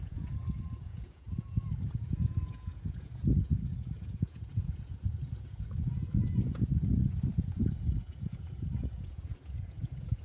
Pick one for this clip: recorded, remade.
remade